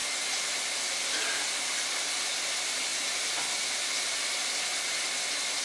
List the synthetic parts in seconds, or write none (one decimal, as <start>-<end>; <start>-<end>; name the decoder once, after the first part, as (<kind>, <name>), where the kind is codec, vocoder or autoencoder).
1.7-2.9 (vocoder, BigVGAN v2)